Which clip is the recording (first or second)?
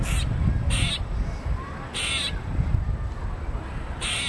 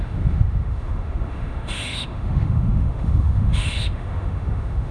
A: first